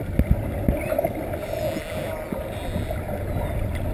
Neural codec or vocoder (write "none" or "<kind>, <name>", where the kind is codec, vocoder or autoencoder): none